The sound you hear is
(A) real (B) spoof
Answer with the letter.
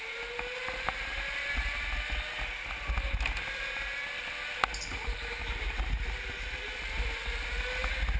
A